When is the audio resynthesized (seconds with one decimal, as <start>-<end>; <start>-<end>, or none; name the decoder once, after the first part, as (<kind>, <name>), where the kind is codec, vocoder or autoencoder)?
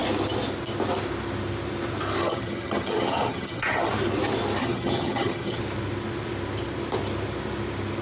2.2-3.9 (vocoder, HiFi-GAN); 4.6-5.6